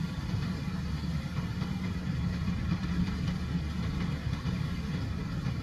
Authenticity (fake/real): real